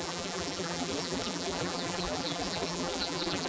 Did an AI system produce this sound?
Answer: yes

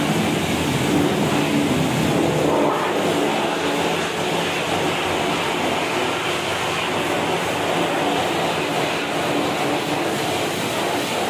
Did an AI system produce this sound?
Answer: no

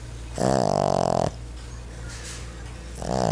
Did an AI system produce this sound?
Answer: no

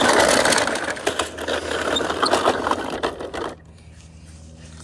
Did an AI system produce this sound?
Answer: no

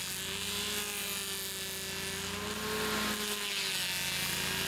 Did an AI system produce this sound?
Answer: no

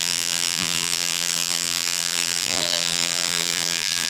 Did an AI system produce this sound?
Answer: yes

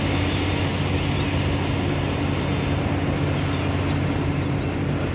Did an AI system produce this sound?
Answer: no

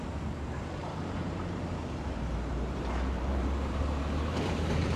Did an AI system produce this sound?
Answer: yes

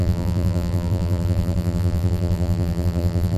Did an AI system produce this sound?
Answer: yes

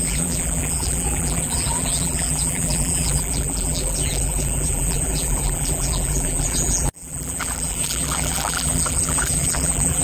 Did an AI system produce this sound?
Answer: yes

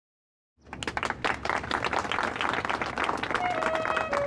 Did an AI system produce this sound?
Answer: no